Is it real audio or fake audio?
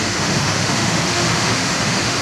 fake